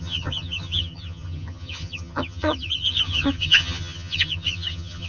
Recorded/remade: remade